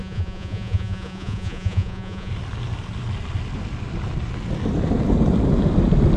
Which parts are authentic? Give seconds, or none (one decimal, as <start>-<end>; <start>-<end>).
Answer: 2.3-6.2